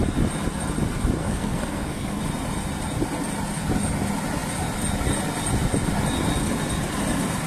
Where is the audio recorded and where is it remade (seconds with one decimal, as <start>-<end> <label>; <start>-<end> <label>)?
0.0-1.2 recorded; 1.2-2.2 remade; 2.2-7.5 recorded